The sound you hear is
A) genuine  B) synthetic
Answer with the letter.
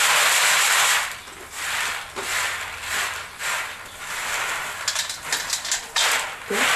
A